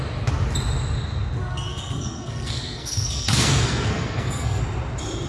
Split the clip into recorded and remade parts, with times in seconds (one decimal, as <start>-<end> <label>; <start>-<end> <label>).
0.0-1.4 recorded; 1.4-4.6 remade; 4.6-5.3 recorded